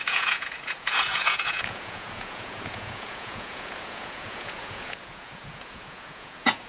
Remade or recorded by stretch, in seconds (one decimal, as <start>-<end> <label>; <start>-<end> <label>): 0.0-6.7 remade